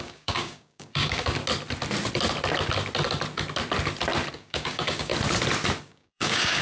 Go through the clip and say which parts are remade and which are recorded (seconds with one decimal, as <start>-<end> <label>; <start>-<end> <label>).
0.0-1.4 remade; 1.4-4.3 recorded; 4.3-5.1 remade; 5.1-5.8 recorded; 5.8-6.6 remade